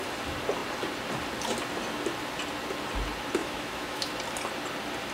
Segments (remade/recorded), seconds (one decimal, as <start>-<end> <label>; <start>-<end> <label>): 0.0-3.4 recorded; 3.4-4.1 remade; 4.1-5.1 recorded